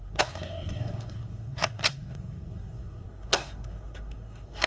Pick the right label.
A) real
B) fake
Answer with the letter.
B